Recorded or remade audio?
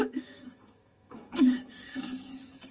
remade